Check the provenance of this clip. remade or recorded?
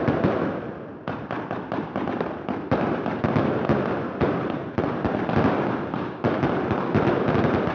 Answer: recorded